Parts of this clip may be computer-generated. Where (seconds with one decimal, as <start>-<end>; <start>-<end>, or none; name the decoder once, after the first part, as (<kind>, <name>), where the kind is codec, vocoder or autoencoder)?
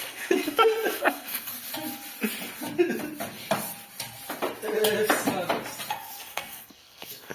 0.0-1.5 (codec, SNAC); 5.9-7.3